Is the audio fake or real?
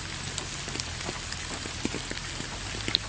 real